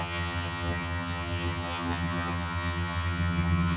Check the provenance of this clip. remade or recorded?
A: remade